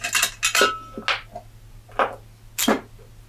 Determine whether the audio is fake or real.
real